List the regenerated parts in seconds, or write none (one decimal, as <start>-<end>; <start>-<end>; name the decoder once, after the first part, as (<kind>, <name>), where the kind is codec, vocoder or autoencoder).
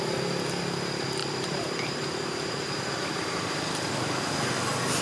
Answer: 1.2-4.2 (vocoder, BigVGAN v2)